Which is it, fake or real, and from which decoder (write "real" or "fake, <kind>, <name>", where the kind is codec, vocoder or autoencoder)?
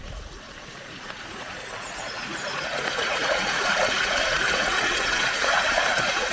fake, vocoder, Vocos